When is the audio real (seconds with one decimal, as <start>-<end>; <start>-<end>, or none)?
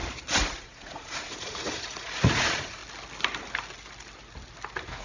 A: 0.0-0.6; 2.8-5.0